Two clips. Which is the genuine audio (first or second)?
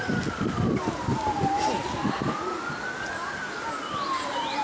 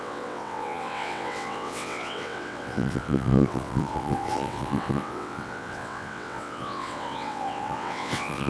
first